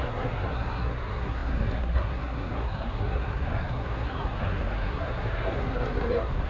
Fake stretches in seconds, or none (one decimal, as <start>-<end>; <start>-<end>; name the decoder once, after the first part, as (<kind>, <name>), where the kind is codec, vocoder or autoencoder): 0.0-6.5 (codec, SNAC)